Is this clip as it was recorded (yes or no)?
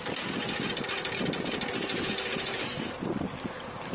yes